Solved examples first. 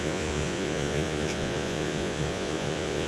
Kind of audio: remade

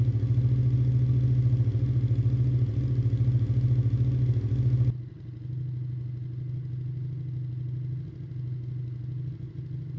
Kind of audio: recorded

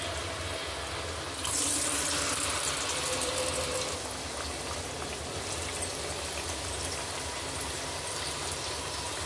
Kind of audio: recorded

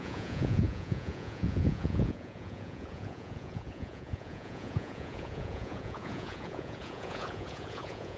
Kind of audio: remade